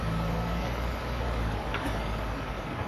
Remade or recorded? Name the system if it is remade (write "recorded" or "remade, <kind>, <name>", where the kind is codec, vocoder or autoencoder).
remade, codec, DAC